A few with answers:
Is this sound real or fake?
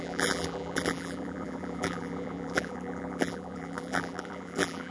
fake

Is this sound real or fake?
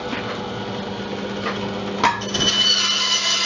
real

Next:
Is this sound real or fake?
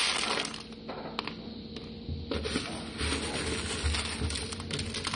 real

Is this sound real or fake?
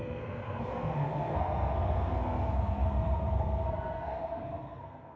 fake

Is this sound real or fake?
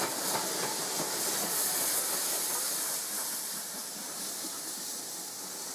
real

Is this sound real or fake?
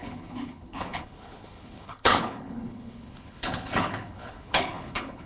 fake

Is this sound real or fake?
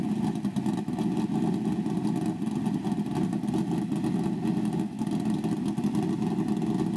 real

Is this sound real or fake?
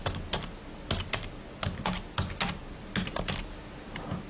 real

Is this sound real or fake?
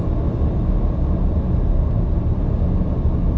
real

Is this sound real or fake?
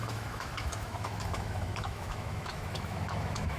fake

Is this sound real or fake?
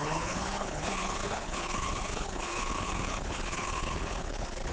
fake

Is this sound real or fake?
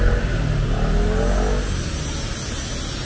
real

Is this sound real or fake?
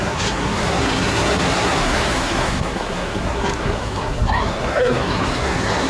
fake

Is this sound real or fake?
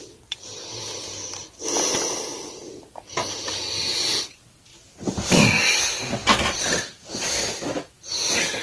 real